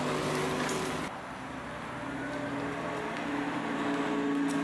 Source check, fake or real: real